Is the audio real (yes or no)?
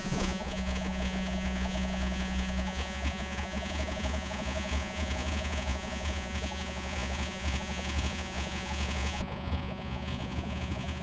no